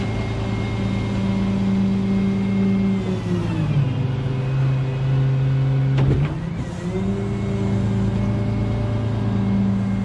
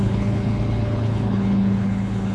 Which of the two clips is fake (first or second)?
second